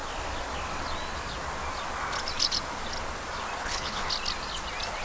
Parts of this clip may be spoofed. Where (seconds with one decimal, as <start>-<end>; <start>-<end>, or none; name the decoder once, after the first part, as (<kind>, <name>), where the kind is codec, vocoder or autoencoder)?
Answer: 3.6-4.1 (codec, HILCodec)